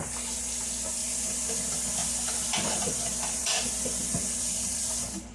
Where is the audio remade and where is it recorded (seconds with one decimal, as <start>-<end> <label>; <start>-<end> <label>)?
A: 0.0-1.0 recorded; 1.0-1.5 remade; 1.5-2.0 recorded; 2.0-5.3 remade